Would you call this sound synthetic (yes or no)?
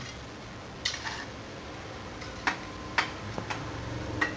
no